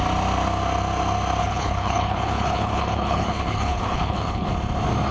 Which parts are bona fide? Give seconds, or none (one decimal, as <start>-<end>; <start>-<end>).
0.0-1.4; 4.5-5.1

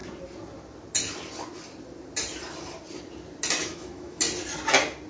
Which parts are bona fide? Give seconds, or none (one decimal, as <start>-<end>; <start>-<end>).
0.0-3.6; 4.2-5.1

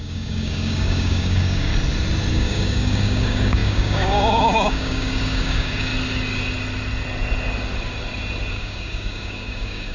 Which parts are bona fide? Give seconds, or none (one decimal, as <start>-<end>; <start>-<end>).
1.7-2.3; 5.9-8.5